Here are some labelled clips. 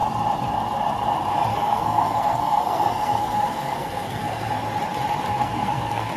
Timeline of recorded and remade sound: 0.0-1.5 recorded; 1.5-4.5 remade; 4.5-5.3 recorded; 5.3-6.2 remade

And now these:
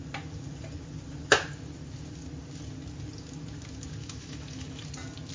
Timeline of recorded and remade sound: 0.0-4.0 recorded; 4.0-4.8 remade; 4.8-5.3 recorded